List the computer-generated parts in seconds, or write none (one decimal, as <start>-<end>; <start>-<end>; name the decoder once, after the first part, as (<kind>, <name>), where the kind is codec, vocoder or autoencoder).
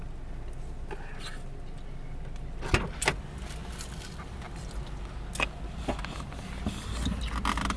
none